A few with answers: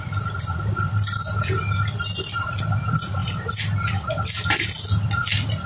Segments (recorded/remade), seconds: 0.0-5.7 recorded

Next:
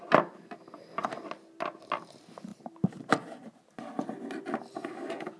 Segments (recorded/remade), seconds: 0.0-5.4 recorded

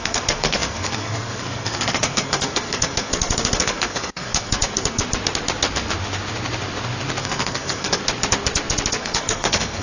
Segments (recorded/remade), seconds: 0.0-5.0 remade; 5.0-7.2 recorded; 7.2-8.0 remade; 8.0-8.9 recorded; 8.9-9.8 remade

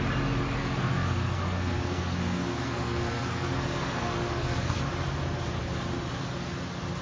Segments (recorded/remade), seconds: 0.0-0.6 recorded; 0.6-4.8 remade; 4.8-7.0 recorded